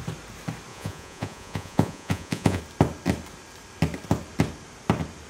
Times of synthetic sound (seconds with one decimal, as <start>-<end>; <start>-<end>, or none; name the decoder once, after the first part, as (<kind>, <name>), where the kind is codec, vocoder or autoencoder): 0.7-2.6 (vocoder, Vocos)